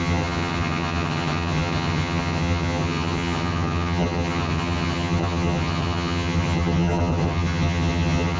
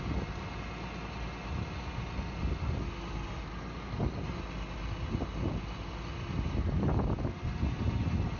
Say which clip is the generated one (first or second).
first